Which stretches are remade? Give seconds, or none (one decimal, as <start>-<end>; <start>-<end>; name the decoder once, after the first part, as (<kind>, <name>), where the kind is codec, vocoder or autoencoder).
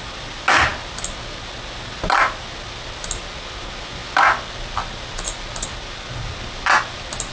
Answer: none